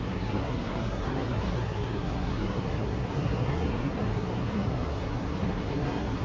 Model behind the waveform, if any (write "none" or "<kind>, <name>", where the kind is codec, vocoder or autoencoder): codec, SNAC